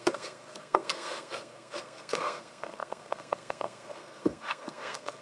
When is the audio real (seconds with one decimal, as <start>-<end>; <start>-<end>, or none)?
none